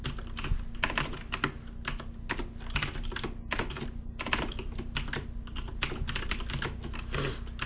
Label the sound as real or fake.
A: real